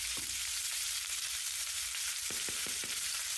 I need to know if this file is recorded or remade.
remade